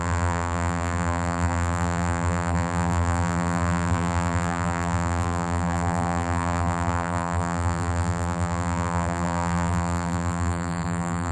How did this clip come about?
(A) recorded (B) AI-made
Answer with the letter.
B